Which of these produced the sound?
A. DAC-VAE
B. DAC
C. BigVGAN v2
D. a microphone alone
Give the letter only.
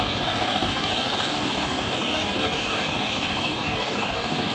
B